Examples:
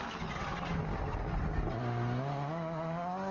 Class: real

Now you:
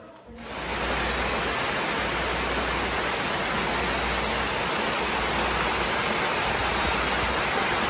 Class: real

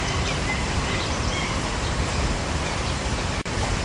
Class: fake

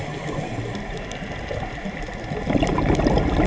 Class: real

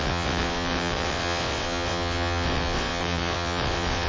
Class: fake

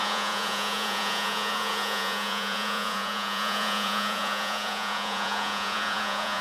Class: fake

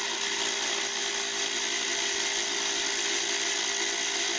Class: real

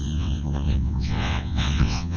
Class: fake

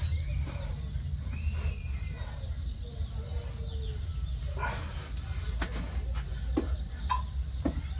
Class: real